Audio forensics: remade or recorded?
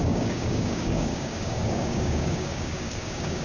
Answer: remade